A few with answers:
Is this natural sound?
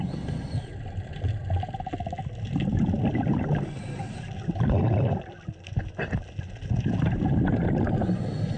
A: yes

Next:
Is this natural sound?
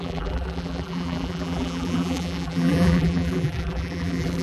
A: no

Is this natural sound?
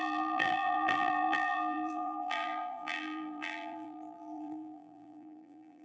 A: no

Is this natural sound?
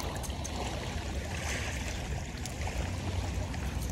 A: yes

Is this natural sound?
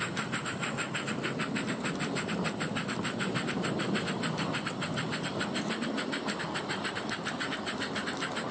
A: yes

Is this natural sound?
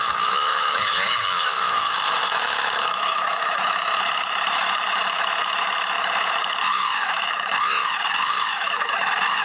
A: no